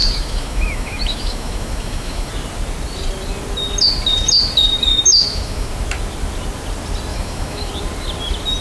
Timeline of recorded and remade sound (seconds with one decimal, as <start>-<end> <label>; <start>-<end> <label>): 0.0-2.3 remade; 2.3-4.9 recorded; 4.9-5.7 remade; 5.7-7.1 recorded; 7.1-7.7 remade; 7.7-8.6 recorded